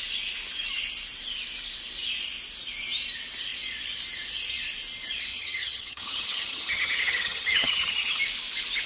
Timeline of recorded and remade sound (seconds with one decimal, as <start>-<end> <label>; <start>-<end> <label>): 0.0-5.3 recorded; 5.3-8.2 remade; 8.2-8.9 recorded